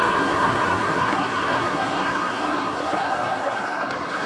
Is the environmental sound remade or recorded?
remade